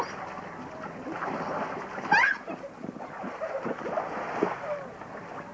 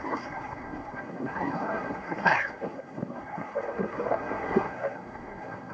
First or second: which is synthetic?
second